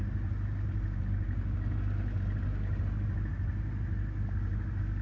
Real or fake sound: real